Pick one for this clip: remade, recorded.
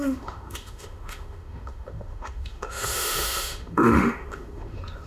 remade